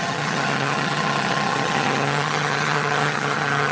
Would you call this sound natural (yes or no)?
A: no